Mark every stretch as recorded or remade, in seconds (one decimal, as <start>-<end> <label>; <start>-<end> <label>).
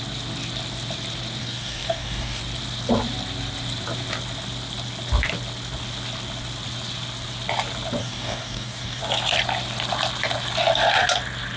0.0-1.4 recorded; 1.4-2.4 remade; 2.4-8.0 recorded; 8.0-9.0 remade; 9.0-11.6 recorded